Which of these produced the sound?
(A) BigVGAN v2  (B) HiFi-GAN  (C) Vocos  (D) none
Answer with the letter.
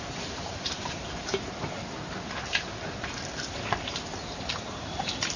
A